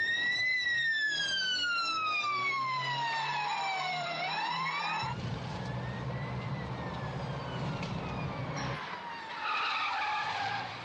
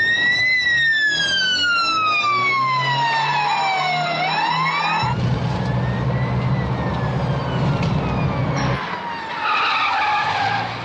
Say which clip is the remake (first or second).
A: first